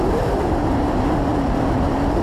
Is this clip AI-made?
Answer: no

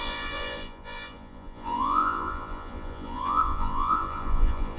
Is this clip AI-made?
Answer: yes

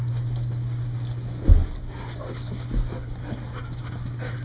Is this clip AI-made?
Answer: no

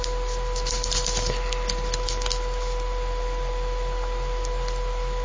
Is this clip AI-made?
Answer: no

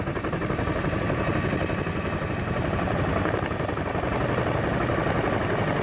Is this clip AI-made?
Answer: no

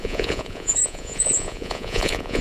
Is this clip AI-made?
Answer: yes